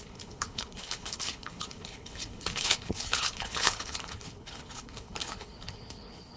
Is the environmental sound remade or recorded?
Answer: remade